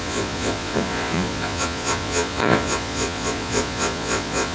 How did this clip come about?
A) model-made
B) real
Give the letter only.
A